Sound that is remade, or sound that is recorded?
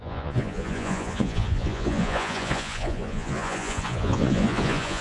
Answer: remade